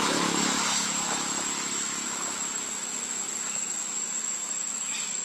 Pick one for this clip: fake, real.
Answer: fake